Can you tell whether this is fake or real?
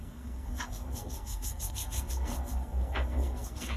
fake